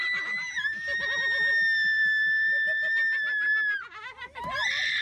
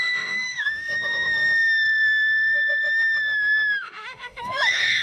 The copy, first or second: second